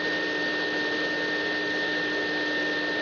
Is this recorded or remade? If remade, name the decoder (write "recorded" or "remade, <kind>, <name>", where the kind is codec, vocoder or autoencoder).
recorded